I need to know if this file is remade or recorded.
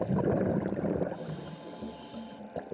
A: recorded